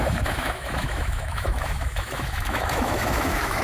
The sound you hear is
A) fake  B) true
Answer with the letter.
A